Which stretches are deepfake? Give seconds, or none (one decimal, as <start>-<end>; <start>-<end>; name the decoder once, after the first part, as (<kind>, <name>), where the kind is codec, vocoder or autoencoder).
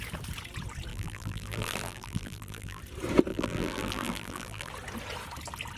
0.9-2.8 (vocoder, BigVGAN v2); 3.3-4.7